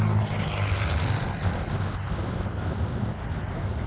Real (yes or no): yes